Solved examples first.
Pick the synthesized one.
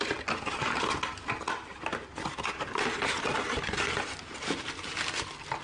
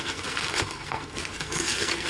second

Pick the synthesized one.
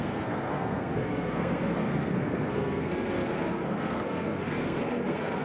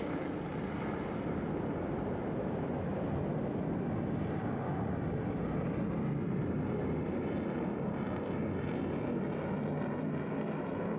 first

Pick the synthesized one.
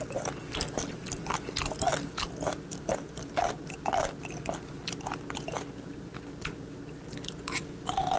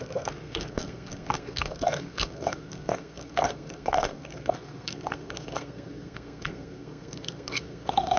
second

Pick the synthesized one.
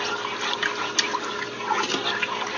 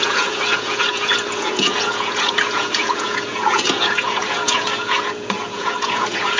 second